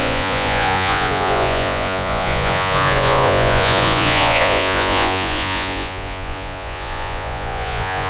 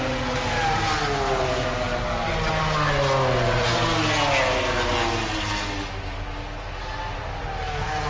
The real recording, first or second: second